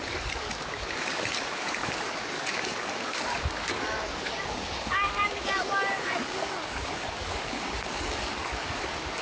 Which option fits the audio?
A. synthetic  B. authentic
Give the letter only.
A